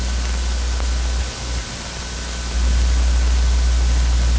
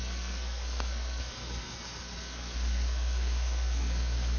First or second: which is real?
first